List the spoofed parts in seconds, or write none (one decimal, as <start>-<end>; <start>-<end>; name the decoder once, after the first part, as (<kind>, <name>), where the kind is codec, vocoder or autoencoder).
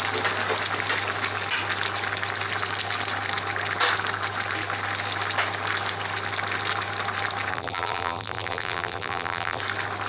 7.5-9.6 (vocoder, BigVGAN v2)